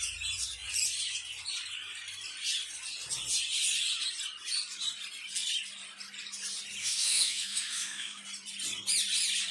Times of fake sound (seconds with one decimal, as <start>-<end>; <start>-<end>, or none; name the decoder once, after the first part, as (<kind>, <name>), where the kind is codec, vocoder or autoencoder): 6.8-8.2 (autoencoder, DAC-VAE)